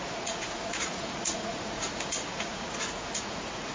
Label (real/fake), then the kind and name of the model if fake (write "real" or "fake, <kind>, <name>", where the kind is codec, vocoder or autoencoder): fake, vocoder, Vocos